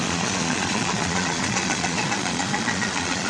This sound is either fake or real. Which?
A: fake